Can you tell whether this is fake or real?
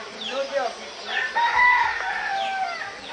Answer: real